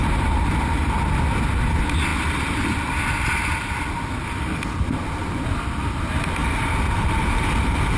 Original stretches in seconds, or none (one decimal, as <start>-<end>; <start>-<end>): 0.0-8.0